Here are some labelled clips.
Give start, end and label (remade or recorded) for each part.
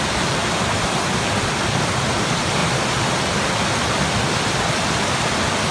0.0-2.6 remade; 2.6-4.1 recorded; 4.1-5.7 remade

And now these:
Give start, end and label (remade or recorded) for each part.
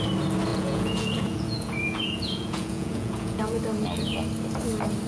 0.0-0.5 recorded; 0.5-3.6 remade; 3.6-5.1 recorded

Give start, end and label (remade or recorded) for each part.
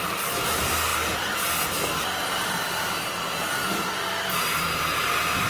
0.0-0.9 remade; 0.9-2.3 recorded; 2.3-3.1 remade; 3.1-4.6 recorded; 4.6-5.5 remade